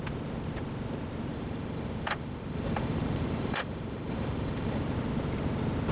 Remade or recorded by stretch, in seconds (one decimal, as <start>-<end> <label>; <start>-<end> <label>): 0.0-1.3 recorded; 1.3-4.8 remade; 4.8-5.9 recorded